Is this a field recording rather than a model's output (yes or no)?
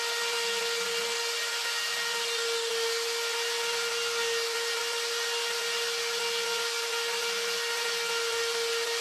yes